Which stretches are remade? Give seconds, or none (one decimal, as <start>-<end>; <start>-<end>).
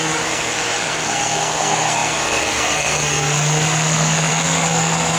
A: 0.0-5.2